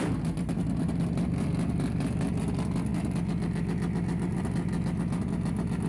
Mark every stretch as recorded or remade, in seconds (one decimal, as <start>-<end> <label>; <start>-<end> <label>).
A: 0.0-5.9 recorded